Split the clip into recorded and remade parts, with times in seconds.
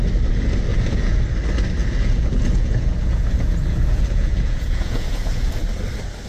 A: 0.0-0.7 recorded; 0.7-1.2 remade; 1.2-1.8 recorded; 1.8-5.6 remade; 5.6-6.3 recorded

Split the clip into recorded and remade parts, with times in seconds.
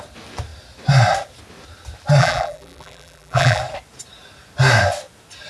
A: 0.0-2.2 recorded; 2.2-3.6 remade; 3.6-5.5 recorded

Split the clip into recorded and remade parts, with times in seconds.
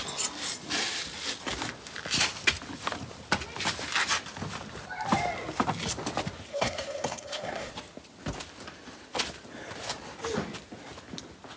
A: 0.0-6.5 recorded; 6.5-7.7 remade; 7.7-11.6 recorded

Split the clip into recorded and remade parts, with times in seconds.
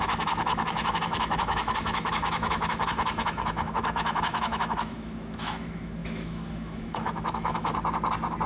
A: 0.0-7.7 remade; 7.7-8.5 recorded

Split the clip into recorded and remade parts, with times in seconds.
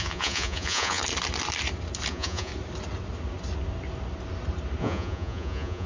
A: 0.0-1.0 remade; 1.0-2.1 recorded; 2.1-2.5 remade; 2.5-4.8 recorded; 4.8-5.9 remade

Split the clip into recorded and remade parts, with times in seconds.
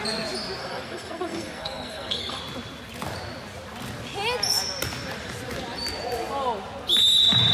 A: 0.0-0.6 recorded; 0.6-2.4 remade; 2.4-7.5 recorded